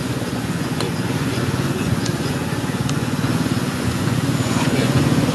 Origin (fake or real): fake